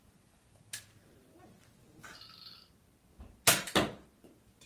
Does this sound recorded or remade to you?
recorded